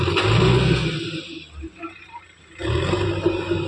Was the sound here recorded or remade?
recorded